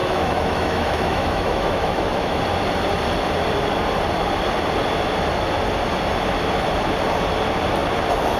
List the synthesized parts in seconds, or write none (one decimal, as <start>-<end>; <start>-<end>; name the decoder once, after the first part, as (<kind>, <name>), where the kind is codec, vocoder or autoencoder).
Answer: 0.0-2.4 (autoencoder, DAC-VAE)